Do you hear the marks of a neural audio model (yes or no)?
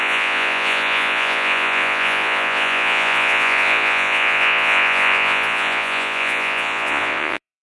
yes